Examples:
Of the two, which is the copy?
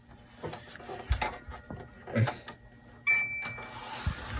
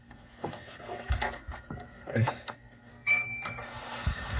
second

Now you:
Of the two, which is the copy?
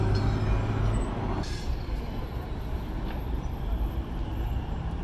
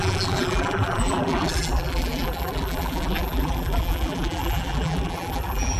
second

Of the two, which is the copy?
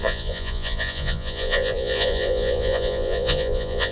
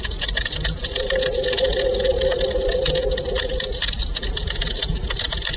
first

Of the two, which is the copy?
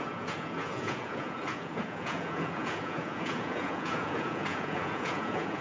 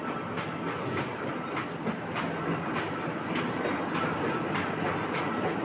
first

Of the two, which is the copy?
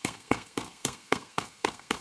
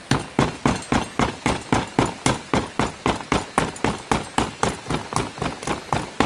first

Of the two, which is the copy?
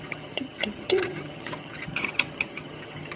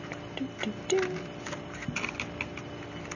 first